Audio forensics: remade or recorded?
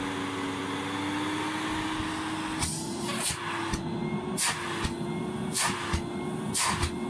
recorded